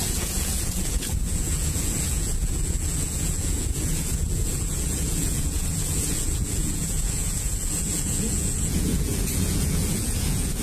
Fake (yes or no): yes